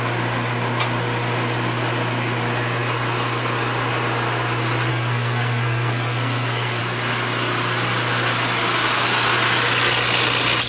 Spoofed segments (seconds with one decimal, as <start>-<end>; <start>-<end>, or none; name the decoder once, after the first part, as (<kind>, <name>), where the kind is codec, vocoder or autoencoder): 4.9-6.8 (codec, SNAC)